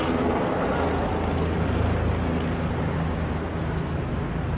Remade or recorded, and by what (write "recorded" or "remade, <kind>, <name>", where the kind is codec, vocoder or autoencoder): recorded